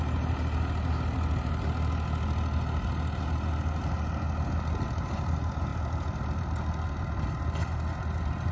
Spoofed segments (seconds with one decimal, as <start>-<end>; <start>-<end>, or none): none